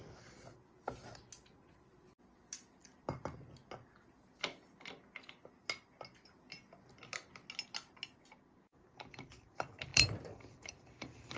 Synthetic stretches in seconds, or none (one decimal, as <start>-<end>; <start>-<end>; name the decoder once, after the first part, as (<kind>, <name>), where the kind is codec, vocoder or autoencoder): 9.9-11.4 (vocoder, BigVGAN v2)